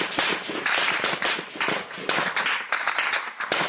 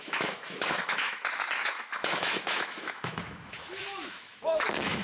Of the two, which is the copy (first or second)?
second